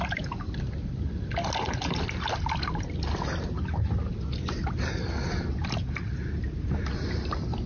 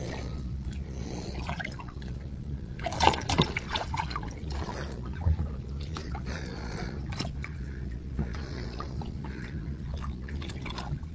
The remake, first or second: second